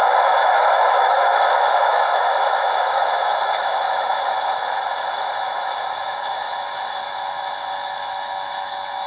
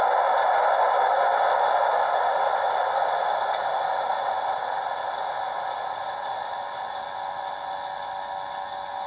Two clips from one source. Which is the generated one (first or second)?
first